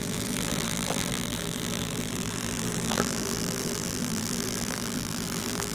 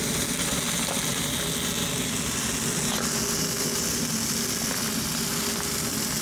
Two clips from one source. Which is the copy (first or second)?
first